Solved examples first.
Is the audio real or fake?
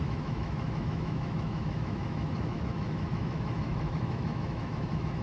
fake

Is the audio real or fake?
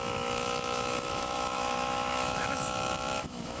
fake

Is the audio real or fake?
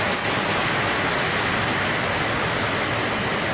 real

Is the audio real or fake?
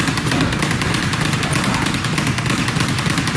real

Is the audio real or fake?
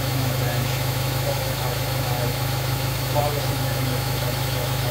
fake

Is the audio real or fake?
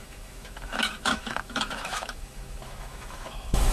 fake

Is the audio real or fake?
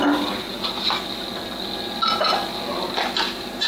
real